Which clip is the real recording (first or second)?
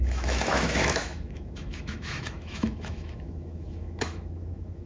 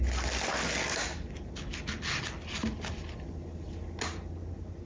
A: second